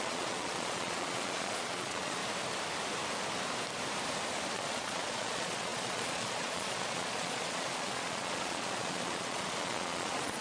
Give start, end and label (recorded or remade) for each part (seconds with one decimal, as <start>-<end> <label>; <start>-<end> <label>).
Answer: 0.0-2.2 remade; 2.2-4.5 recorded; 4.5-10.4 remade